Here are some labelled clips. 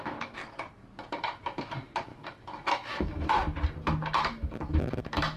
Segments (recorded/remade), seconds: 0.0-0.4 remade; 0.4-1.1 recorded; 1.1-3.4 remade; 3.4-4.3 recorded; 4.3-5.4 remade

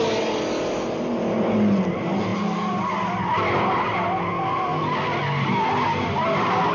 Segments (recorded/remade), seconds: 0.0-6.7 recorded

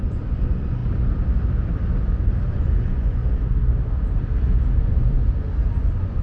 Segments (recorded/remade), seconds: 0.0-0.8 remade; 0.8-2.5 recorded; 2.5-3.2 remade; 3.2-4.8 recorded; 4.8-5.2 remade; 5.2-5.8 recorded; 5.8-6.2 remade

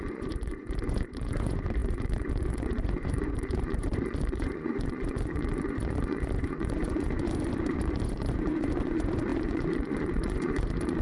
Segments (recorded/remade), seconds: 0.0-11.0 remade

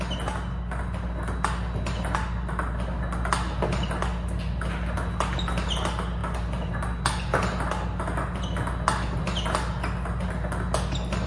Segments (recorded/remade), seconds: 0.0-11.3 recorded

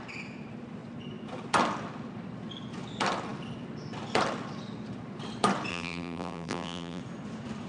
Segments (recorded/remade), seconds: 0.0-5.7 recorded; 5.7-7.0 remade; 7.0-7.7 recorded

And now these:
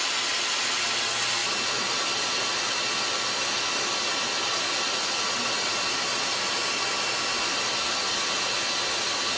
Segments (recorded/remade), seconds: 0.0-9.4 recorded